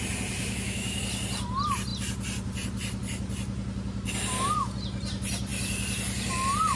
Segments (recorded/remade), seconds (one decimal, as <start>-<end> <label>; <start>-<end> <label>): 0.0-0.4 recorded; 0.4-1.0 remade; 1.0-6.8 recorded